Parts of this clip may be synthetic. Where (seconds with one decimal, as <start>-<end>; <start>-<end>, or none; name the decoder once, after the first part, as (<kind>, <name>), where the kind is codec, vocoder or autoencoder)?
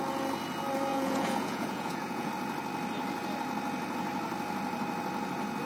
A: 0.9-2.3 (vocoder, Vocos)